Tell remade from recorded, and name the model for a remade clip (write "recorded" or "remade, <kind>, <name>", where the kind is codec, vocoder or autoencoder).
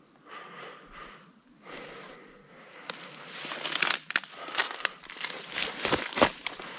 recorded